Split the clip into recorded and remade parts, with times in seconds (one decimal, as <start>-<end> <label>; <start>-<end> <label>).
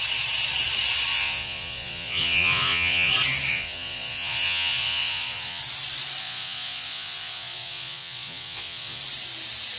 0.0-1.1 recorded; 1.1-3.1 remade; 3.1-3.5 recorded; 3.5-5.6 remade; 5.6-6.2 recorded; 6.2-9.0 remade; 9.0-9.8 recorded